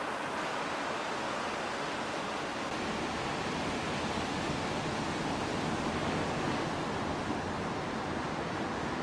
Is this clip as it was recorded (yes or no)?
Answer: yes